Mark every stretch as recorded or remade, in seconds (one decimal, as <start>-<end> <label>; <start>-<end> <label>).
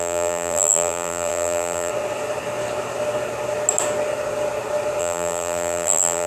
0.0-1.9 remade; 1.9-5.0 recorded; 5.0-6.3 remade